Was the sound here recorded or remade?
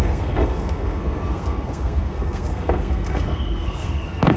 remade